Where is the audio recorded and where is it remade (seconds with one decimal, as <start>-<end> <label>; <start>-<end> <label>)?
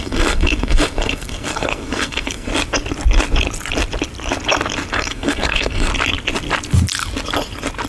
0.0-2.5 remade; 2.5-4.9 recorded; 4.9-5.9 remade; 5.9-7.9 recorded